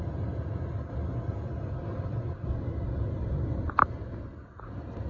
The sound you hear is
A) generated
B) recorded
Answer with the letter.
B